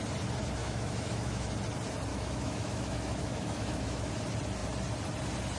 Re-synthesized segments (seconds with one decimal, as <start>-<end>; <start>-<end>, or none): 0.6-1.5; 2.1-4.1